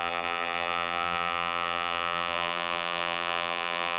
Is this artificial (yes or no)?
yes